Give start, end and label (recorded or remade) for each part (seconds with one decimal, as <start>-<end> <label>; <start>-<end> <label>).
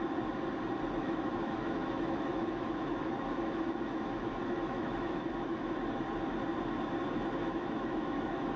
0.0-1.0 recorded; 1.0-5.7 remade; 5.7-7.4 recorded; 7.4-8.6 remade